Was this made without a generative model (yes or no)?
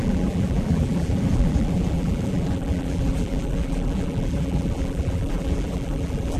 no